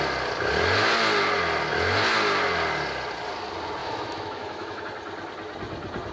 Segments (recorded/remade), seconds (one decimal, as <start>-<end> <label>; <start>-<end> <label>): 0.0-3.8 recorded; 3.8-4.8 remade; 4.8-6.1 recorded